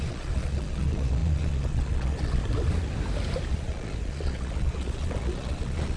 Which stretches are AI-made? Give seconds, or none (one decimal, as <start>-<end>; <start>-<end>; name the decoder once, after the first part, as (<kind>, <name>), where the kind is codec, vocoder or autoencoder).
0.0-2.4 (vocoder, Vocos); 3.5-6.0